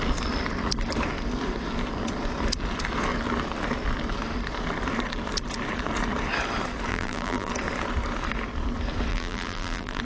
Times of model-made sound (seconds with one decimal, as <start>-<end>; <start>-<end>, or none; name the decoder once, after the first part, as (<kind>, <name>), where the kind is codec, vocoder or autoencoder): 6.9-7.5 (vocoder, BigVGAN v2); 9.1-10.0